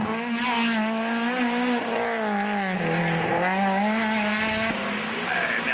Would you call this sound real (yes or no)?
yes